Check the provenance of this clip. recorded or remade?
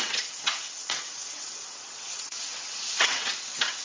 remade